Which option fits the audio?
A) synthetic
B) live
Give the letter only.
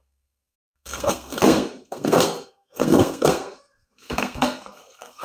A